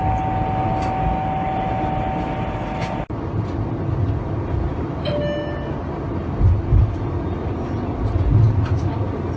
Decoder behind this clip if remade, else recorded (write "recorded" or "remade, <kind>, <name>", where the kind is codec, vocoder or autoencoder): recorded